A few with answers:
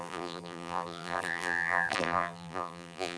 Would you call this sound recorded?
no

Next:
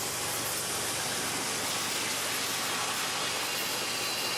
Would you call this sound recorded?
yes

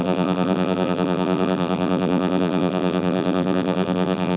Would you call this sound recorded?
no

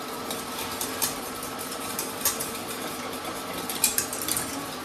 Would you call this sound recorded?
no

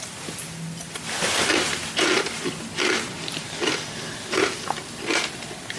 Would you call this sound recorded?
yes